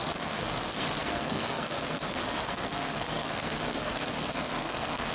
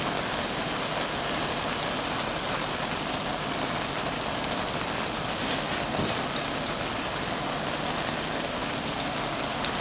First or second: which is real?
second